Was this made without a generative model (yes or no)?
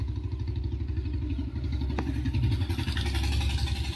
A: yes